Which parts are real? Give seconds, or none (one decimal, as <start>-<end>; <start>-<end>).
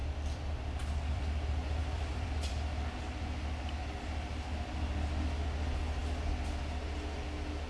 1.2-1.8; 2.5-7.7